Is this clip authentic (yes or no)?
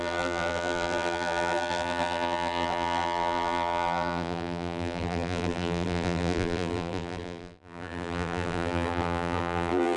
no